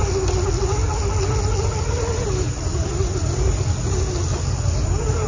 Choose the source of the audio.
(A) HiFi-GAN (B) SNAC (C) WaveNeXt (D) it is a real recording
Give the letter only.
D